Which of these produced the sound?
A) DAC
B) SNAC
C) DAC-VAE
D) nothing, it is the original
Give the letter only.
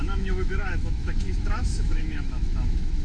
C